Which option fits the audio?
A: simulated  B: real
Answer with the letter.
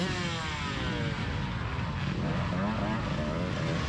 B